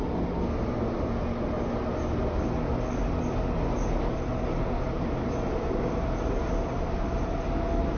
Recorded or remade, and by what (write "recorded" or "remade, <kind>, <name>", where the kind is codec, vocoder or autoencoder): recorded